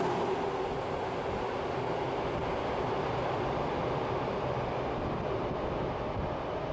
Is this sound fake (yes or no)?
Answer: no